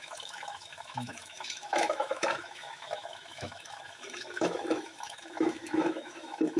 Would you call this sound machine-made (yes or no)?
yes